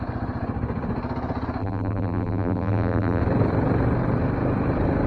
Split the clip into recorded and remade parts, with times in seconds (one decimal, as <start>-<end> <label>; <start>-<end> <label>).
0.0-1.6 recorded; 1.6-3.2 remade; 3.2-5.1 recorded